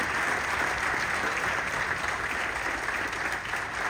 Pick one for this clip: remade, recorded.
recorded